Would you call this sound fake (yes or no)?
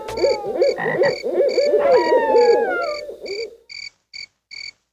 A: no